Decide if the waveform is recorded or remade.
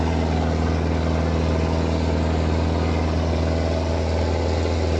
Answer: recorded